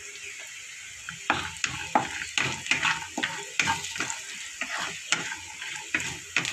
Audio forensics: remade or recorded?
recorded